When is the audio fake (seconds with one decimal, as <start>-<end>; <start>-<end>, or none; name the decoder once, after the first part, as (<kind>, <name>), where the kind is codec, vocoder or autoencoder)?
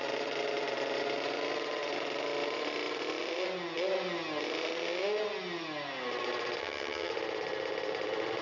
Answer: 6.6-7.1 (vocoder, HiFi-GAN)